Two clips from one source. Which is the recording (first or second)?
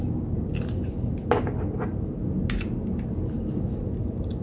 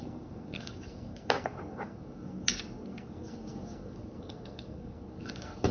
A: first